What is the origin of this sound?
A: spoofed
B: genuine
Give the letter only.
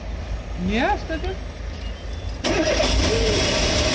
B